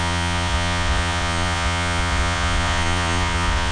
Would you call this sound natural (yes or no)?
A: no